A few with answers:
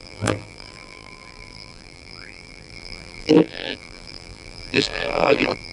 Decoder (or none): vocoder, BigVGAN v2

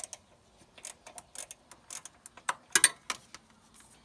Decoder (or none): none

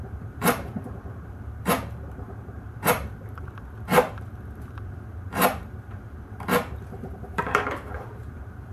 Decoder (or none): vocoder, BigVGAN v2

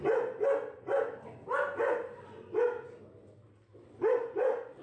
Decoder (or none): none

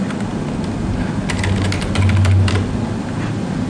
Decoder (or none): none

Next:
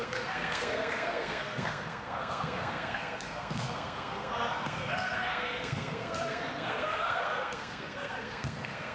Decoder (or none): codec, SNAC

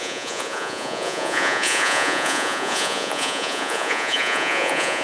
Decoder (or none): vocoder, Vocos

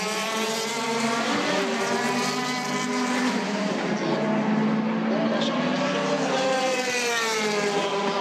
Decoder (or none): none